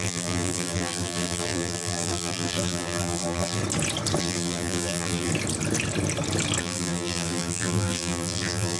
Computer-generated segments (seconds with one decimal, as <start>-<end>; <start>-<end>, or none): 0.0-3.6; 4.2-5.3; 6.6-8.8